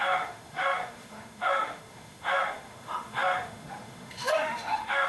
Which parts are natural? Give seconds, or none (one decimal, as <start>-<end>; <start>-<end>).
none